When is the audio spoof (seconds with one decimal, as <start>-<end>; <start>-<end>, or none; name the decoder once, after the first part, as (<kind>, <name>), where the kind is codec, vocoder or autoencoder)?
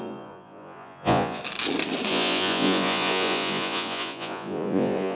0.0-1.4 (vocoder, Vocos); 2.1-5.1